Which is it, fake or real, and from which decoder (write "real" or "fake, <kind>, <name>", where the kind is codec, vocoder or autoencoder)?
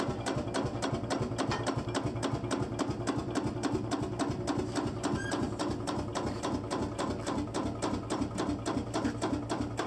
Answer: real